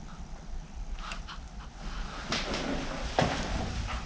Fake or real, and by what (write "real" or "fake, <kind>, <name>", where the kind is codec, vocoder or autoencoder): real